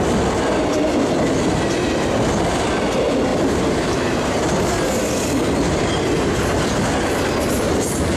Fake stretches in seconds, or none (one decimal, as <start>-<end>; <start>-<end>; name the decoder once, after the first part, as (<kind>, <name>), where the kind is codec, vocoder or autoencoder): 3.3-4.4 (vocoder, BigVGAN v2)